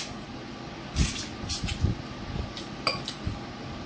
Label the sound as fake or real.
real